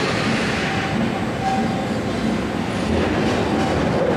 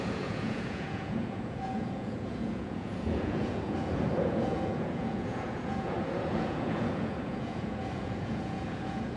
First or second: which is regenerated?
second